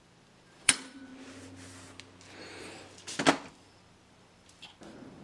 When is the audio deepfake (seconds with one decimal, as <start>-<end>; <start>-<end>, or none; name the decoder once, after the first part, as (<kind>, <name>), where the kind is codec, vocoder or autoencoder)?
0.0-1.1 (vocoder, BigVGAN v2); 3.5-5.2